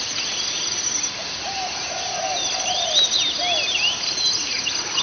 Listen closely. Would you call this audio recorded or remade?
recorded